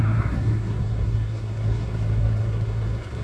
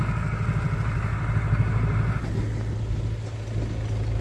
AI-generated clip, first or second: first